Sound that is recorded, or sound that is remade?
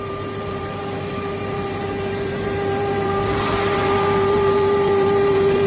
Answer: remade